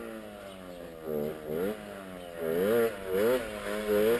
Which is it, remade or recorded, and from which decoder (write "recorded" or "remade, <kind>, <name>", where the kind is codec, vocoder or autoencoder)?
recorded